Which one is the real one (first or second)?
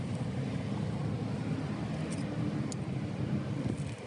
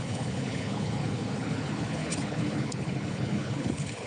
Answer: first